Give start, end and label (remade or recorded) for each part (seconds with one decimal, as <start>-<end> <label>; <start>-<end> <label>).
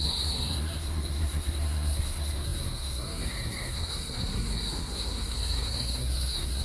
0.0-6.6 remade